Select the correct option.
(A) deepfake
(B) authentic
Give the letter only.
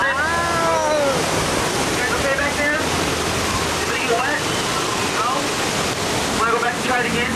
B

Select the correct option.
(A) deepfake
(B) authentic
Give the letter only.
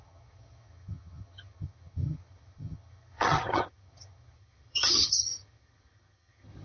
A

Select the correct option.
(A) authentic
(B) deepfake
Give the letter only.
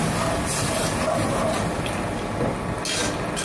A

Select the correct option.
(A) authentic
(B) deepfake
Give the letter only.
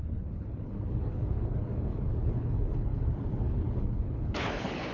B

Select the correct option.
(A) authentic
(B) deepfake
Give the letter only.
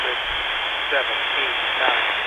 A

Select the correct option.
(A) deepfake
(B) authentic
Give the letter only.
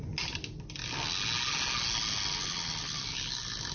B